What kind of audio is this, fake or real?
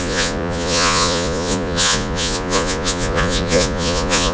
fake